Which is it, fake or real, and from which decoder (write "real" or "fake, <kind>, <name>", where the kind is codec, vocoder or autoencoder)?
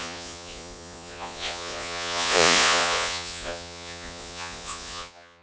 fake, vocoder, Vocos